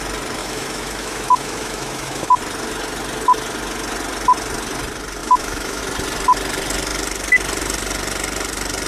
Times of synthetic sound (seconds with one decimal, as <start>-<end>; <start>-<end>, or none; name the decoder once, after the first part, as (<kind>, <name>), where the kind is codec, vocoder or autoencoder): 0.4-2.4 (autoencoder, DAC-VAE); 5.2-5.8

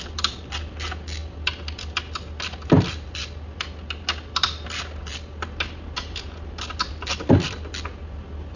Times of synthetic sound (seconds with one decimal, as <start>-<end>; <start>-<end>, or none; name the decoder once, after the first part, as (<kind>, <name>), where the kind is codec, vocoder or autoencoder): none

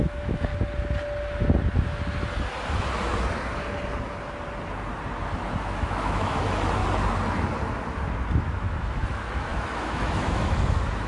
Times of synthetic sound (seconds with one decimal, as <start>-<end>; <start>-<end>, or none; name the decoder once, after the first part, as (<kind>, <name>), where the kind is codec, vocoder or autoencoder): 0.0-0.5 (autoencoder, DAC-VAE); 5.6-6.8; 8.4-11.1